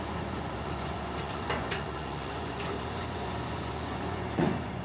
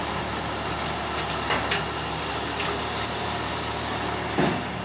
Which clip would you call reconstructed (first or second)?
first